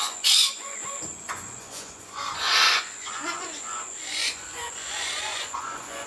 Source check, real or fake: fake